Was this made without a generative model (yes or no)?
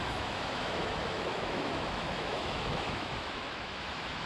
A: no